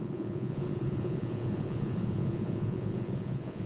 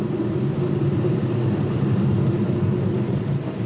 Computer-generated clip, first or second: first